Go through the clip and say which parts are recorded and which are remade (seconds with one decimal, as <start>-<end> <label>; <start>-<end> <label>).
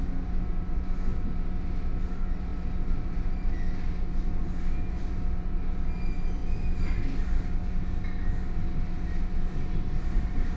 0.0-10.6 recorded